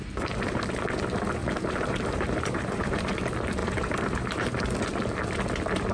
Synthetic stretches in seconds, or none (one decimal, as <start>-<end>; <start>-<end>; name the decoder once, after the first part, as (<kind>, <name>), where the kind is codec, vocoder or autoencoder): 1.4-3.1 (vocoder, BigVGAN v2); 3.6-4.6